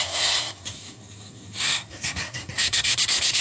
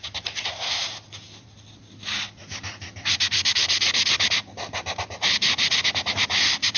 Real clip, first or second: second